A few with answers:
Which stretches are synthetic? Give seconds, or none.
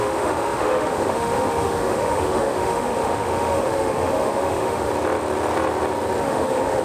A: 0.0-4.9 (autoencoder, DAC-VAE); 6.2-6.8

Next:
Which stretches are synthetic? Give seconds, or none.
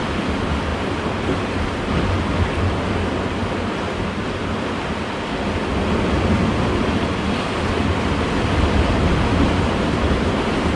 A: none